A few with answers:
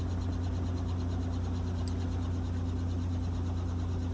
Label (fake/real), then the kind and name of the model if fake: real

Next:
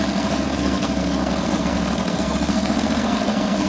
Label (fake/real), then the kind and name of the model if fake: fake, codec, SNAC